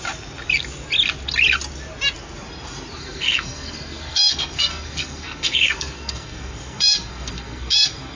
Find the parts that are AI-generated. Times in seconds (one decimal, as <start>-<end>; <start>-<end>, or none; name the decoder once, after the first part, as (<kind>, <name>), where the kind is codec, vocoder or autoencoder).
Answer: 3.0-8.2 (codec, SNAC)